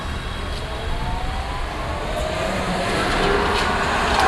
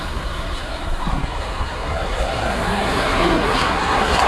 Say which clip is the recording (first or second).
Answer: first